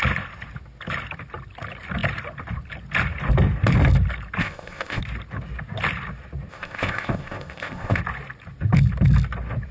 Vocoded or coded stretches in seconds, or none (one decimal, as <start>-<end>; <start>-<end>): 4.4-5.0; 6.5-8.0